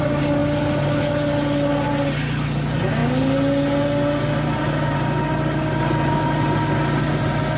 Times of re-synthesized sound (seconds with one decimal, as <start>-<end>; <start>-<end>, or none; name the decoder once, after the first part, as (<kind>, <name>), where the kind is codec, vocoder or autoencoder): none